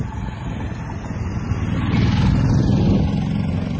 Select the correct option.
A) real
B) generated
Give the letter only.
A